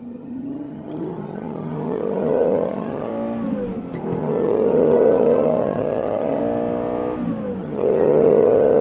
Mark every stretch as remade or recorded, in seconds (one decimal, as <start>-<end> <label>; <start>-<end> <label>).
0.0-3.1 remade; 3.1-4.2 recorded; 4.2-6.4 remade; 6.4-7.6 recorded; 7.6-8.8 remade